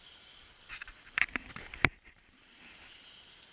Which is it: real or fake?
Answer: fake